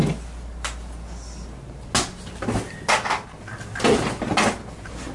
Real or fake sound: real